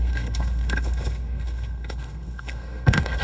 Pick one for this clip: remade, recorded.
remade